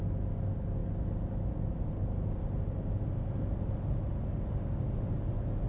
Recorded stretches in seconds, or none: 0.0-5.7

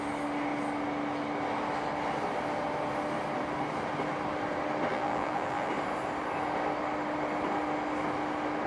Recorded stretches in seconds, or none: 0.0-4.9; 5.7-8.7

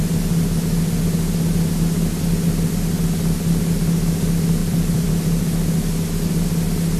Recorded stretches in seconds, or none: 0.0-4.6; 5.1-7.0

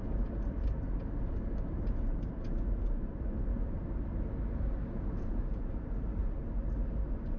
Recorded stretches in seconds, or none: 3.8-4.8; 7.0-7.4

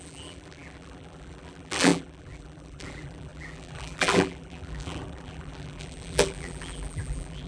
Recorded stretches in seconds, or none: none